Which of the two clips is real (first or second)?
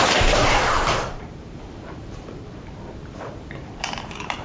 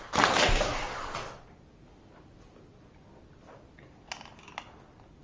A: second